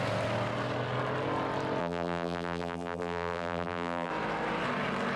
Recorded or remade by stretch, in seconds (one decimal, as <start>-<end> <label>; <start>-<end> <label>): 0.0-1.8 recorded; 1.8-4.1 remade; 4.1-5.2 recorded